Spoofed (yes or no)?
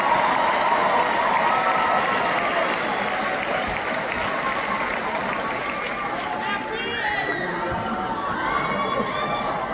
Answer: no